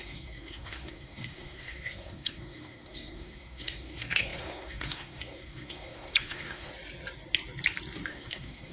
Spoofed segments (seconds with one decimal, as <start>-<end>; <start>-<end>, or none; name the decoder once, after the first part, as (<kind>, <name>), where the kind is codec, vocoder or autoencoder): 0.0-6.7 (codec, SNAC); 8.1-8.7